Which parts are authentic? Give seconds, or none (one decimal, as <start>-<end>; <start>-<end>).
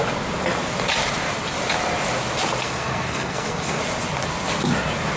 0.0-2.6; 3.8-5.2